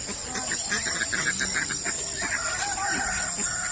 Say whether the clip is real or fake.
real